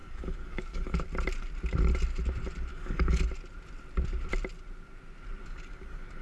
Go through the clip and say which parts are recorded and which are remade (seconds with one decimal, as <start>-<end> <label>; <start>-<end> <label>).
0.0-1.0 remade; 1.0-2.7 recorded; 2.7-3.2 remade; 3.2-5.4 recorded; 5.4-6.2 remade